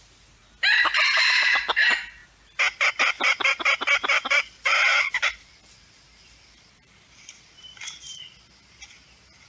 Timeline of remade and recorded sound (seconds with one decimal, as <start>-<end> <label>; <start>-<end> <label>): 0.0-4.9 recorded; 4.9-7.6 remade; 7.6-9.5 recorded